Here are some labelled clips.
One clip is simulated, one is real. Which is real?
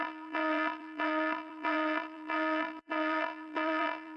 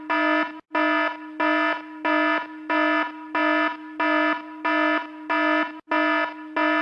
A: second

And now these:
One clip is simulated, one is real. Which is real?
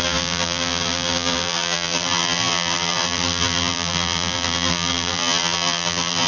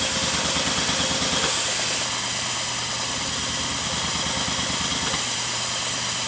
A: second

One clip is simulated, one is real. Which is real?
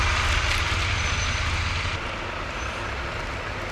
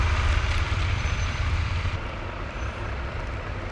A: first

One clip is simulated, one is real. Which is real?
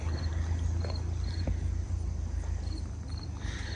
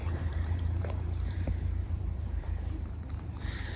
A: first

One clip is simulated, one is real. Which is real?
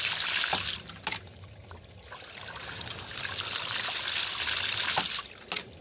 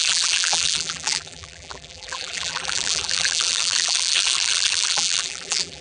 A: first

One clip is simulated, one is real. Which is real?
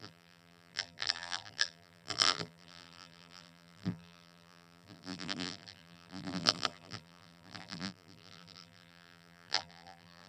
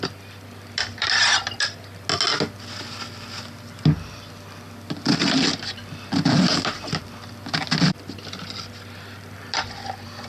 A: second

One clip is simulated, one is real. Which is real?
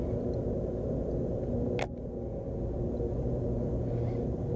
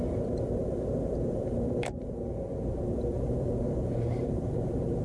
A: first